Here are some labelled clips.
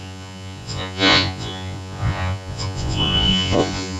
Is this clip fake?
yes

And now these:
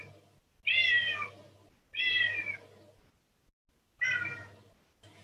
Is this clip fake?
no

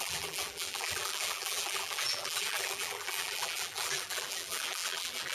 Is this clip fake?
yes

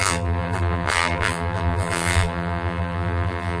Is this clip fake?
yes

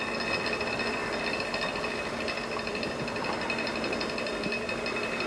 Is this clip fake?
yes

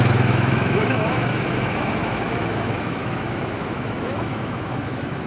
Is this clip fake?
yes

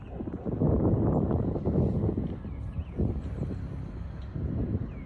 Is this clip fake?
no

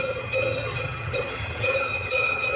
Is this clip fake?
yes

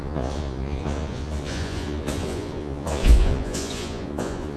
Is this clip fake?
yes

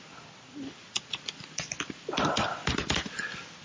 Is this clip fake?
no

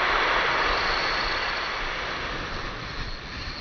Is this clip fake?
no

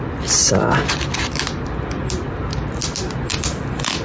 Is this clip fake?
no